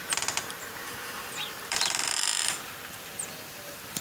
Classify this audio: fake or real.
fake